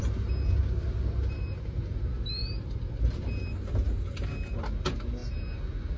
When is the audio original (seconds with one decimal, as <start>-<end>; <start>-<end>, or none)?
0.0-0.6; 1.8-2.4; 3.0-6.0